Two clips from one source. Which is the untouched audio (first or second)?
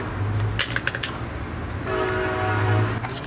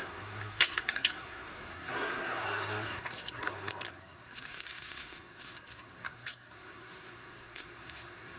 first